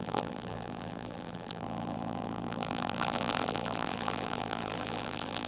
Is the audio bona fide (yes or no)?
no